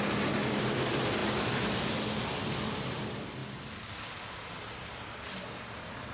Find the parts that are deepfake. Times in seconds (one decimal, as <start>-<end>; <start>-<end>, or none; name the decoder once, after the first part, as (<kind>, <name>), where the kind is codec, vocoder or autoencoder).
none